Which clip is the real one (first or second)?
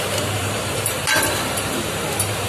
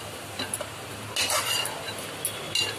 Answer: second